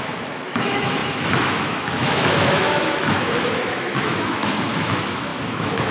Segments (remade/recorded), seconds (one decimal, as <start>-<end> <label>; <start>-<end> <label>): 0.0-5.9 remade